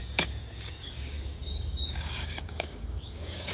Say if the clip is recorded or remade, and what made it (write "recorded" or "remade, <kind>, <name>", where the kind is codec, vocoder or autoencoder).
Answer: remade, codec, DAC